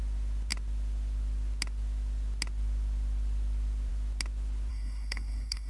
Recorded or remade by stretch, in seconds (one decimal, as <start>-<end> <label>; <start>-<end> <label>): 0.0-4.7 recorded; 4.7-5.7 remade